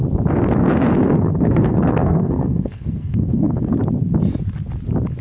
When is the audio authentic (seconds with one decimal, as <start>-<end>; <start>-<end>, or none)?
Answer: 0.0-0.6; 3.7-5.2